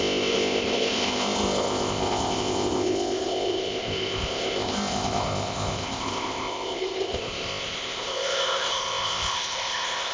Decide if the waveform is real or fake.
fake